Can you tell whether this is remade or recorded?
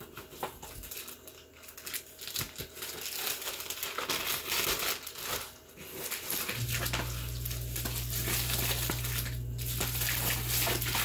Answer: recorded